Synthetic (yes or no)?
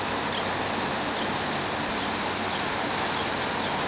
no